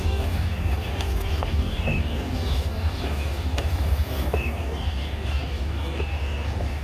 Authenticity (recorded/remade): remade